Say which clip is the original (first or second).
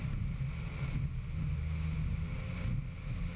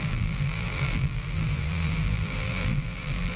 first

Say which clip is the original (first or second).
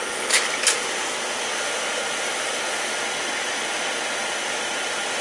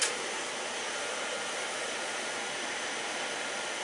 first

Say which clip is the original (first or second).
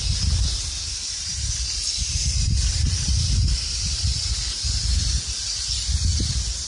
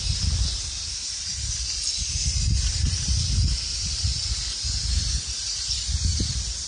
second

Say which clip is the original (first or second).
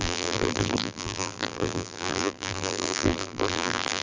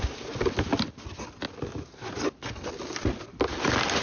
second